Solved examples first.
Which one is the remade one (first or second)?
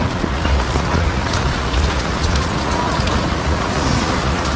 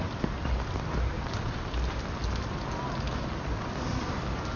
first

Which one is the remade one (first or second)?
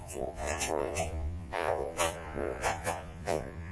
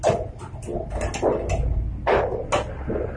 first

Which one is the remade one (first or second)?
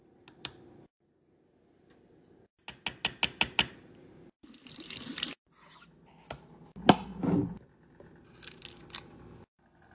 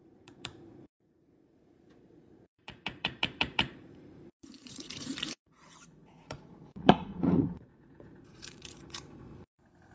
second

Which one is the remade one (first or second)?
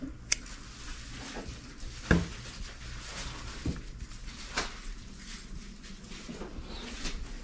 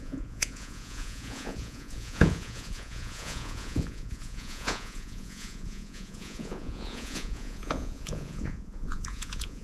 second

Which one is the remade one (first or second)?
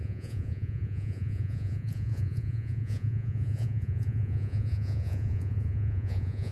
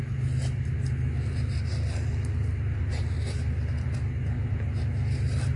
first